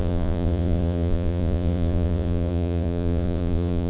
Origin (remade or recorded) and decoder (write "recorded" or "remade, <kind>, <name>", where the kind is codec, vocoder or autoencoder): remade, vocoder, Vocos